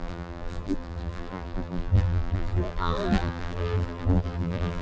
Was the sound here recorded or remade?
remade